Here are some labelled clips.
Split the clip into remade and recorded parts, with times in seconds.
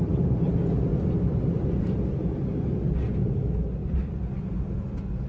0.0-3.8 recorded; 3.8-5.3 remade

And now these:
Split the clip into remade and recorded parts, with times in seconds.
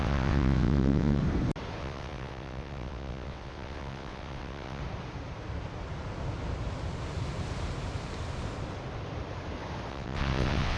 0.0-1.2 remade; 1.2-1.8 recorded; 1.8-4.8 remade; 4.8-9.9 recorded; 9.9-10.8 remade